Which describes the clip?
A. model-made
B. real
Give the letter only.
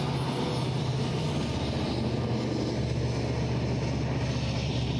B